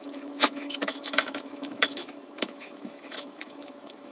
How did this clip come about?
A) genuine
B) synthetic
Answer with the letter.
B